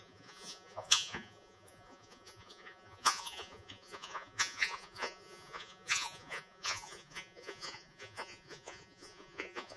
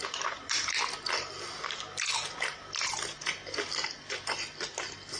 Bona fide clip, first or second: second